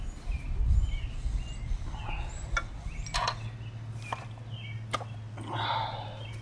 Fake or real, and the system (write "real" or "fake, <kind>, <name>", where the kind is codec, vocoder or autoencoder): real